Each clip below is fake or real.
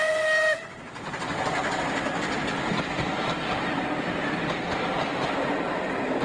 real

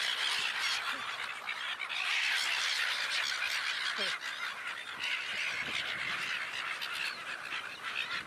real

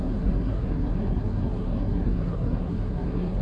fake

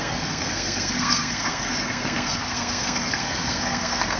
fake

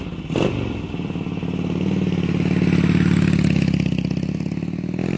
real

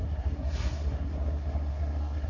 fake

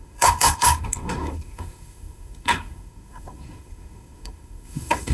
fake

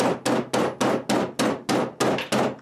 real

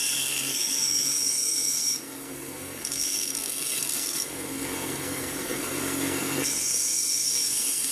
fake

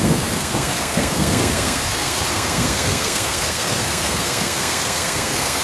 fake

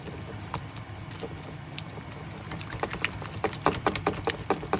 real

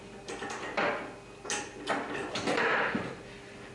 real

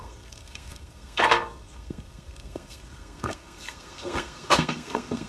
fake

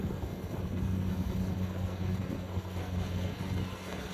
fake